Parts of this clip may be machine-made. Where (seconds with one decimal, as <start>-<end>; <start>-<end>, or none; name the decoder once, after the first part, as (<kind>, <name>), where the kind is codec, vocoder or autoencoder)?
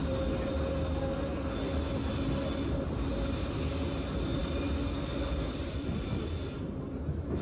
none